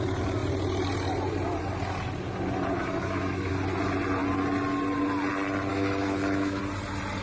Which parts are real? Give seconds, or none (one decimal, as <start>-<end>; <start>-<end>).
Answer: 0.0-2.8; 3.5-5.7; 6.6-7.2

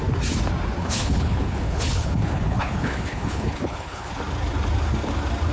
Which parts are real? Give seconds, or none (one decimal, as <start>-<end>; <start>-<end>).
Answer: 0.0-0.8; 4.1-5.5